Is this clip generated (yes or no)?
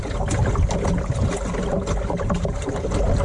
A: no